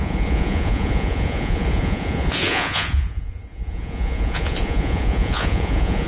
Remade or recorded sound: remade